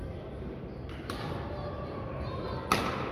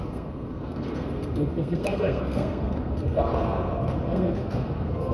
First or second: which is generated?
second